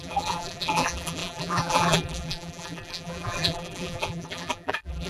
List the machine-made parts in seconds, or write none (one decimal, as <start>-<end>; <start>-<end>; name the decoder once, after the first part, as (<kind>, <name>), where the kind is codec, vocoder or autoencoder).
0.0-5.1 (vocoder, BigVGAN v2)